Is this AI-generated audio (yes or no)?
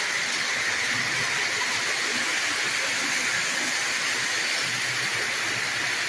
no